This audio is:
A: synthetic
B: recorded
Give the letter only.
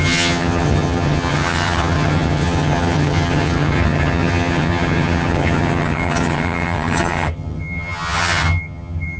A